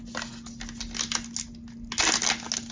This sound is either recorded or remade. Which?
recorded